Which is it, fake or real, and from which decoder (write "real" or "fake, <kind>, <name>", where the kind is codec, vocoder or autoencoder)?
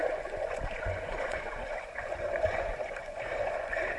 fake, vocoder, Vocos